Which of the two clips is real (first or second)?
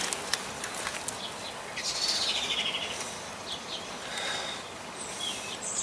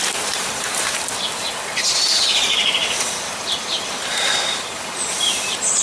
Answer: first